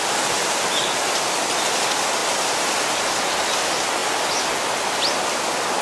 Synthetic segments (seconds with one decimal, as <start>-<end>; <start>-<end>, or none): 2.2-3.3